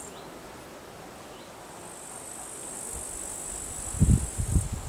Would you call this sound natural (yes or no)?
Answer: yes